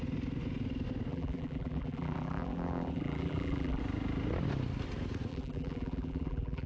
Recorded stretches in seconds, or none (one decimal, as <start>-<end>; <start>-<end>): 0.0-1.1; 3.8-5.3